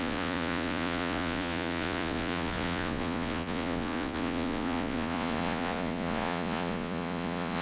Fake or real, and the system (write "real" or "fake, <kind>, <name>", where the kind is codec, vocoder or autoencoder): fake, vocoder, Vocos